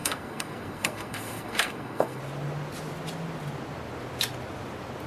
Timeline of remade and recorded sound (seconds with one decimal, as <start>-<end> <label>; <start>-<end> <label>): 0.0-2.2 remade; 2.2-5.1 recorded